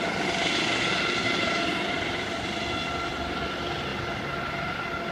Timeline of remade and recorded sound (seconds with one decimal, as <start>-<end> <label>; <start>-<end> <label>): 0.0-5.1 recorded